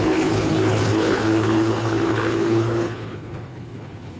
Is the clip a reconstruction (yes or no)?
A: yes